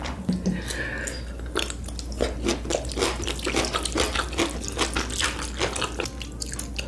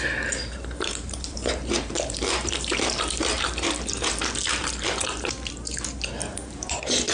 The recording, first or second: first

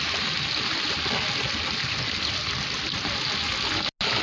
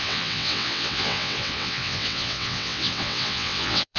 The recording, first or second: first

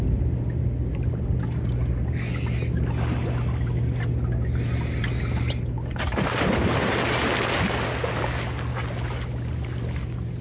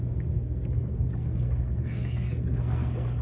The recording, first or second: first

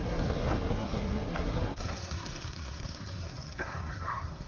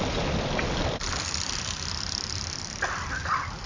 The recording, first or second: second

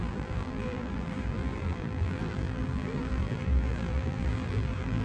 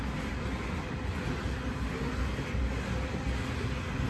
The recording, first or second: second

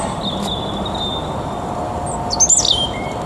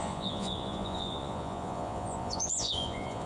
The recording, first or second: first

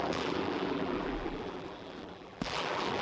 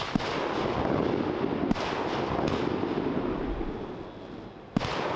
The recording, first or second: second